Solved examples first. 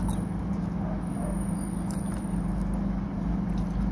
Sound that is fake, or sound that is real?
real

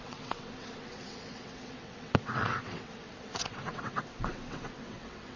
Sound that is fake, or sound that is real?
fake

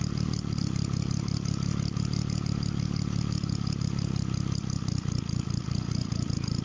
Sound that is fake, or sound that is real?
real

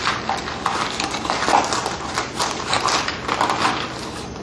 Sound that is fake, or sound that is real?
real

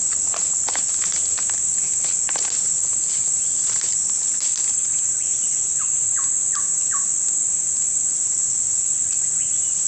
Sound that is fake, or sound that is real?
real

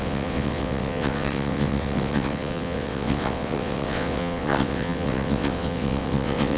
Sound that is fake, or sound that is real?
fake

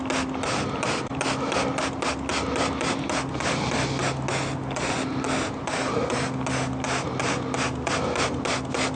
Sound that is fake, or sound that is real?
real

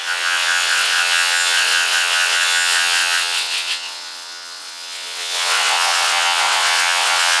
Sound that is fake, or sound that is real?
fake